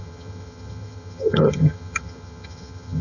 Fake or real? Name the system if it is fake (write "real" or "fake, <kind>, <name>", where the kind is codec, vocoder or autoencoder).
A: fake, vocoder, HiFi-GAN